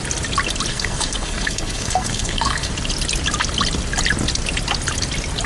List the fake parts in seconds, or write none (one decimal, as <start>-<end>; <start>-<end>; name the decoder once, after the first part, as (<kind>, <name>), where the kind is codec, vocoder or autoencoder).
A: 0.7-2.7 (codec, SNAC)